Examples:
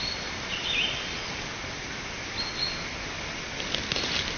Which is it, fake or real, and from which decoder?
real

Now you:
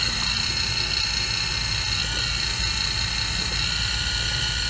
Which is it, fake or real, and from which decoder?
real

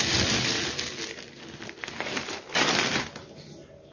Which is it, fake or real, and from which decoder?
real